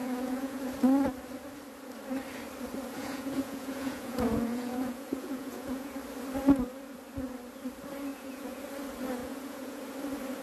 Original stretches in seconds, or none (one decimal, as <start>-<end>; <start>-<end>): 0.6-3.0; 5.9-8.1; 8.6-9.2; 9.8-10.4